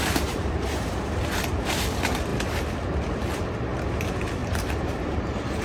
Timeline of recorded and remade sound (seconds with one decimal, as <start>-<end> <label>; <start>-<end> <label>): 0.0-1.2 remade; 1.2-4.4 recorded; 4.4-5.6 remade